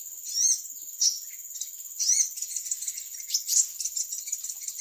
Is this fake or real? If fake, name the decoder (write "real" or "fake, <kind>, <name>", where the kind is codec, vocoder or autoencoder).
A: real